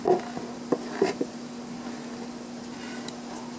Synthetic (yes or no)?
no